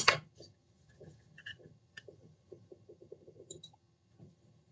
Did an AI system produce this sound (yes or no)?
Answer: yes